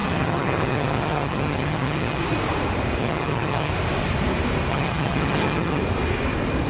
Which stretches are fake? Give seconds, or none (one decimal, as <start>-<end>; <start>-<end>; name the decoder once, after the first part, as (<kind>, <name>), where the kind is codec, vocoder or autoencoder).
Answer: 0.0-2.2 (vocoder, HiFi-GAN); 3.0-3.7; 4.7-5.8